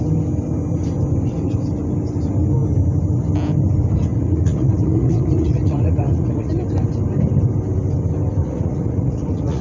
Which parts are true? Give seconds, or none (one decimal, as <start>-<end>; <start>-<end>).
0.0-4.1; 6.5-8.4